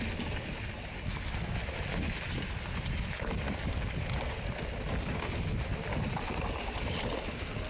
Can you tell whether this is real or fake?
real